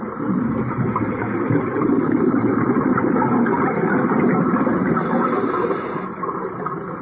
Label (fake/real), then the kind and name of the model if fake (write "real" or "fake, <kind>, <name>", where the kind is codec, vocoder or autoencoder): real